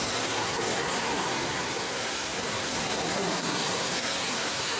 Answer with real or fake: fake